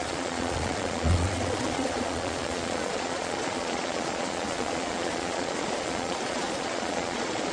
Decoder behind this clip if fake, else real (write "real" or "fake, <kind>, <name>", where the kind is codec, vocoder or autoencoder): fake, vocoder, Vocos